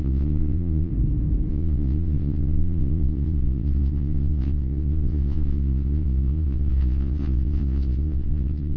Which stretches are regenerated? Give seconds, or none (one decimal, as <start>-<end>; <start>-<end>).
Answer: 0.0-0.9; 1.5-8.8